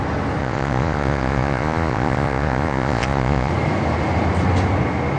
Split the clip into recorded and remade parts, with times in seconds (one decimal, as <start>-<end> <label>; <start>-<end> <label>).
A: 0.0-0.4 recorded; 0.4-3.5 remade; 3.5-5.2 recorded